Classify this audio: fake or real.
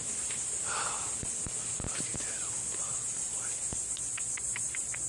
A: real